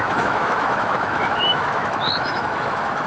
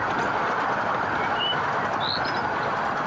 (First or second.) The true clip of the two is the second